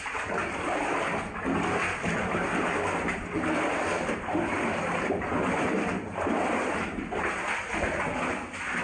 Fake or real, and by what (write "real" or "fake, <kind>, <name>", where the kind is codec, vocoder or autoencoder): real